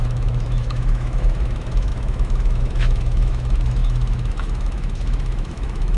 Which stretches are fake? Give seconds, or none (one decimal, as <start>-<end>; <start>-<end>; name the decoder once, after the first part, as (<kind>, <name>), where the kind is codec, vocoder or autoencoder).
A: 0.0-6.0 (autoencoder, DAC-VAE)